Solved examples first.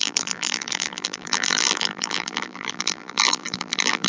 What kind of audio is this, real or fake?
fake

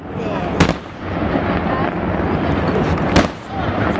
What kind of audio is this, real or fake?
real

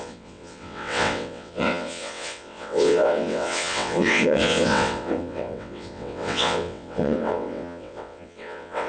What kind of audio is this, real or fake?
fake